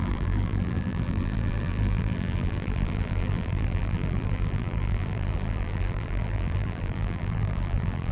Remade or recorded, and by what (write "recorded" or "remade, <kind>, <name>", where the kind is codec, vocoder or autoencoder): remade, vocoder, BigVGAN v2